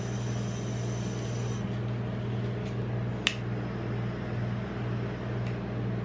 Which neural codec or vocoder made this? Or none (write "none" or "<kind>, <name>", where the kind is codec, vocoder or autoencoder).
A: none